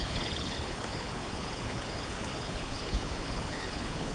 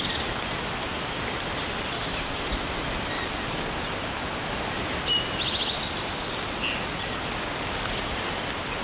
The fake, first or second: first